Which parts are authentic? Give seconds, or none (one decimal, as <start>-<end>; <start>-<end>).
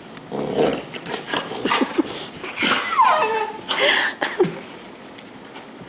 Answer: 0.0-5.9